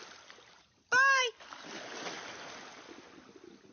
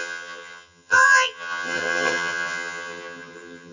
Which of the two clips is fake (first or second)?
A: second